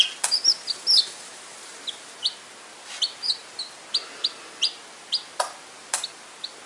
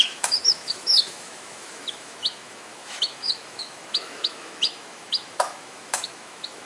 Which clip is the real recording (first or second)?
first